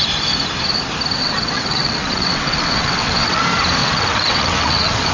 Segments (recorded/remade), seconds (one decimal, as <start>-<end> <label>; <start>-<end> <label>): 0.0-1.2 recorded; 1.2-3.4 remade; 3.4-3.8 recorded; 3.8-5.1 remade